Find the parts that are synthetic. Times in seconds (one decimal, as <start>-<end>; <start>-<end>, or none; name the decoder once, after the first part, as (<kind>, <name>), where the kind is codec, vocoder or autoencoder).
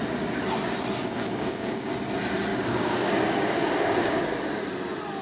1.0-1.9 (codec, DAC); 2.5-4.2